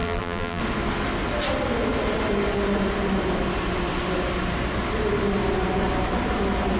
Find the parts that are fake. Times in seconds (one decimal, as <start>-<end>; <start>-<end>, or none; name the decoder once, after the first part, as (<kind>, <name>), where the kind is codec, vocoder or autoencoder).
0.0-0.6 (vocoder, BigVGAN v2)